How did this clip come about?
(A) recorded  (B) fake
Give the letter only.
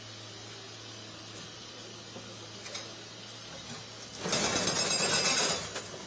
A